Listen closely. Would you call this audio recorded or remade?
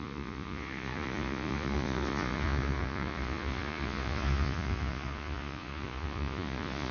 remade